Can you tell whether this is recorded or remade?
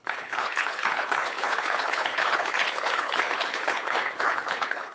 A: remade